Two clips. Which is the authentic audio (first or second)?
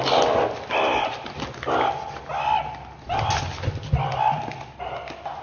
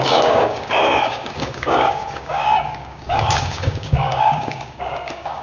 first